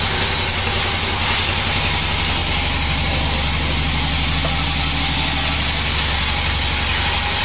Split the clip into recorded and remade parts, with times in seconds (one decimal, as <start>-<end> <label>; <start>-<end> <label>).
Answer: 0.0-7.4 recorded